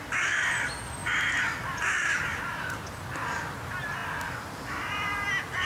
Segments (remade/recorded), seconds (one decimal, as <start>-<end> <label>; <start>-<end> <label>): 0.0-5.7 recorded